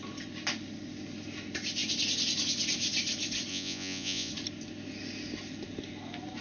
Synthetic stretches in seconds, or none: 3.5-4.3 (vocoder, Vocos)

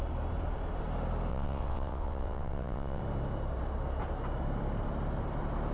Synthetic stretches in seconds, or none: 1.3-3.0 (vocoder, WaveNeXt)

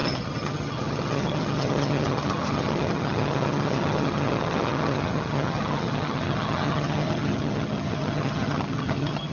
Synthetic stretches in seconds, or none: 0.0-9.3 (vocoder, HiFi-GAN)

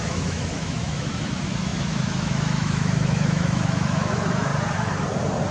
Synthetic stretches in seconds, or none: 0.0-4.5 (autoencoder, DAC-VAE)

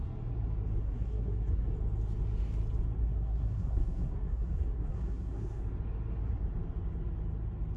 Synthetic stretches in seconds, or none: 0.8-1.7 (codec, SNAC); 3.0-5.6

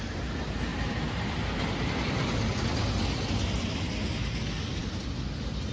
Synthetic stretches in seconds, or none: none

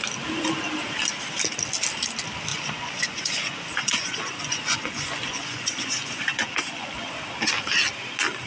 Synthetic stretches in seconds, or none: 2.5-7.1 (vocoder, Vocos)